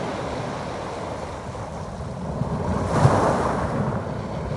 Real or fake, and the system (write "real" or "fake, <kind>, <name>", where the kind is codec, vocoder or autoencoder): real